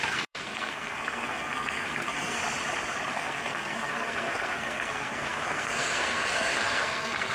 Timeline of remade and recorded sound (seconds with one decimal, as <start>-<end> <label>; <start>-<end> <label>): 0.0-2.4 remade; 2.4-3.1 recorded; 3.1-7.3 remade